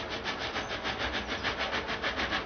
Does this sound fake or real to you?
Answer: real